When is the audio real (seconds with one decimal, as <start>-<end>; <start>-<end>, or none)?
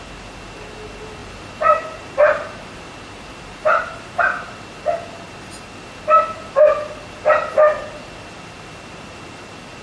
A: 0.0-1.2; 4.2-9.8